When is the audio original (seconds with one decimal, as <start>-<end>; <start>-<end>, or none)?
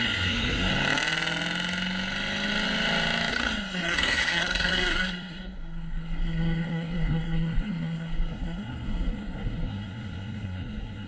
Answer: 0.7-3.3